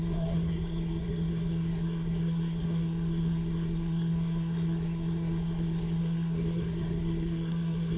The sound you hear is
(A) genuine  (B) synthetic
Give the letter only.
B